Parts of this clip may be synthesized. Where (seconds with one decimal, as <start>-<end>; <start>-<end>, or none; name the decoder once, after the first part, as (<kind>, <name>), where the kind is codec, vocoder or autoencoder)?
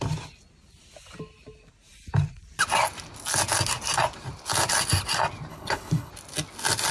5.5-6.1 (codec, HILCodec)